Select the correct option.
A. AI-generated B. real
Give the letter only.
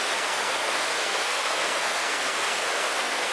A